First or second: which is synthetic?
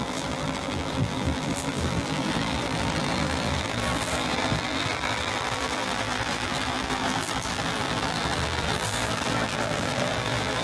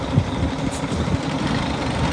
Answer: first